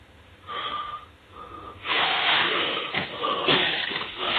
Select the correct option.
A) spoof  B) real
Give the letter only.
A